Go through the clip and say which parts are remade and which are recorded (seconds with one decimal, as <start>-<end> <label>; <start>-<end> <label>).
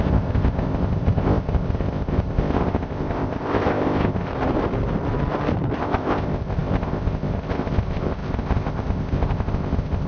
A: 0.0-4.3 remade; 4.3-5.8 recorded; 5.8-10.1 remade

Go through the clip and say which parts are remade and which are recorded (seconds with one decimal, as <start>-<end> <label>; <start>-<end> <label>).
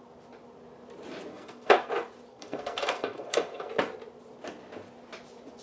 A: 0.0-1.3 recorded; 1.3-1.9 remade; 1.9-2.3 recorded; 2.3-3.7 remade; 3.7-5.6 recorded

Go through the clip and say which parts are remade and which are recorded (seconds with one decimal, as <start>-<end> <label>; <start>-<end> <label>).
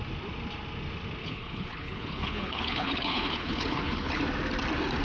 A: 0.0-1.2 recorded; 1.2-4.2 remade; 4.2-5.0 recorded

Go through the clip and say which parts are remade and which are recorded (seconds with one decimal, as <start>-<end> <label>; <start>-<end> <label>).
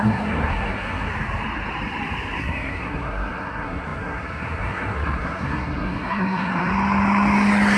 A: 0.0-1.1 remade; 1.1-2.4 recorded; 2.4-6.7 remade; 6.7-7.8 recorded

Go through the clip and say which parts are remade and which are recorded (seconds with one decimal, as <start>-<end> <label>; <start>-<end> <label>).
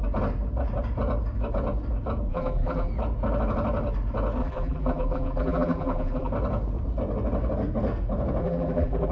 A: 0.0-2.3 recorded; 2.3-2.9 remade; 2.9-4.4 recorded; 4.4-6.3 remade; 6.3-8.4 recorded; 8.4-9.1 remade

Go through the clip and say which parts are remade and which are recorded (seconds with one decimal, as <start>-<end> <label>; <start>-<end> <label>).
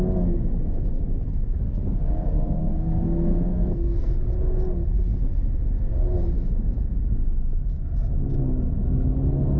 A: 0.0-3.5 recorded; 3.5-4.2 remade; 4.2-9.6 recorded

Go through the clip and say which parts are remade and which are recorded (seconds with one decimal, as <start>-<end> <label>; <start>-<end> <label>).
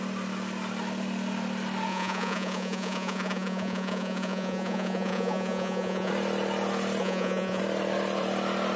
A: 0.0-1.9 recorded; 1.9-6.1 remade; 6.1-7.0 recorded; 7.0-7.6 remade; 7.6-8.8 recorded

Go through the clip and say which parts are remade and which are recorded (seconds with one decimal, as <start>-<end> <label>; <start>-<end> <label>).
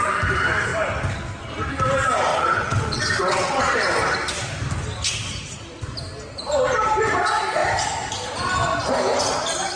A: 0.0-2.3 recorded; 2.3-3.6 remade; 3.6-9.8 recorded